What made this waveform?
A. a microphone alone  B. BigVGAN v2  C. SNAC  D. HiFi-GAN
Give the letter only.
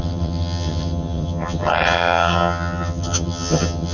D